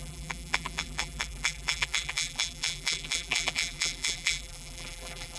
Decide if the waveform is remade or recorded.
remade